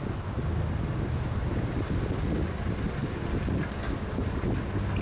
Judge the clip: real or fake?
real